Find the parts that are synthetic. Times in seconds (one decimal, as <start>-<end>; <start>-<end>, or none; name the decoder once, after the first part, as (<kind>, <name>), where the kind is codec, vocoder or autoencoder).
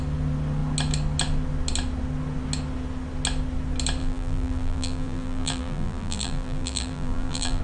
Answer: 4.0-7.6 (vocoder, BigVGAN v2)